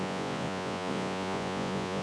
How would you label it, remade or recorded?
remade